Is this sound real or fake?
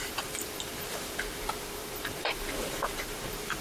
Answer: fake